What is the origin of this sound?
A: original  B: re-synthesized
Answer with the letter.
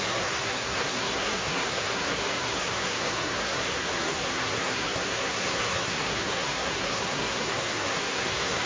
B